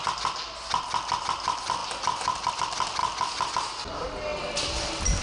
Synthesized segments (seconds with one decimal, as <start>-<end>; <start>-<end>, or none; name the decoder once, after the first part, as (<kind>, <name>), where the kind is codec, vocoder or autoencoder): none